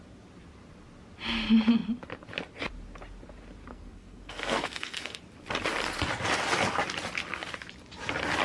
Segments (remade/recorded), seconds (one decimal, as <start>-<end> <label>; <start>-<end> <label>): 0.0-3.7 recorded; 3.7-5.2 remade; 5.2-8.4 recorded